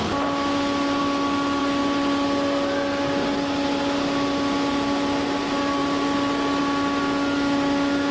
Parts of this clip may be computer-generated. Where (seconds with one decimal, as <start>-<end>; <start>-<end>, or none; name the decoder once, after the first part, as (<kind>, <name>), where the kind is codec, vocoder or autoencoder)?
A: none